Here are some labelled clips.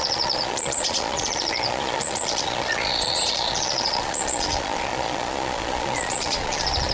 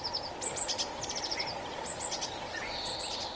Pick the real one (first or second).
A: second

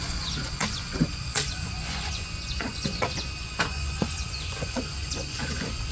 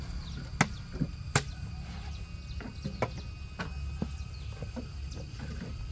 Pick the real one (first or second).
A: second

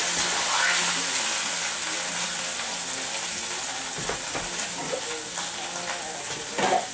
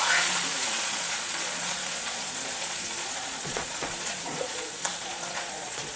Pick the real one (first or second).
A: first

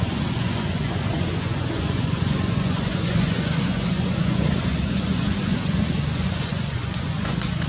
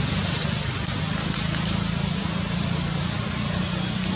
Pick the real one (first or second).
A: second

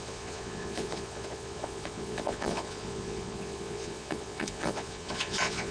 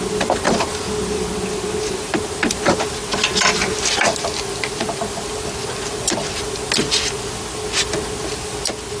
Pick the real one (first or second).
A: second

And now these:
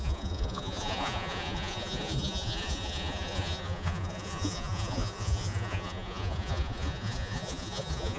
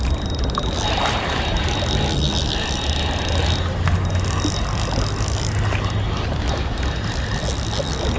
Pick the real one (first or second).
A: second